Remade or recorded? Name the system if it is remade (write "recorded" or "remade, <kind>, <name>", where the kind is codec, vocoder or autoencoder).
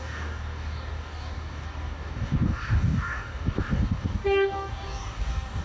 remade, codec, DAC